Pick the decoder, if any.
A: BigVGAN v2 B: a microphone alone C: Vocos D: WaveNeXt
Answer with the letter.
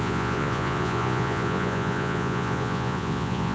C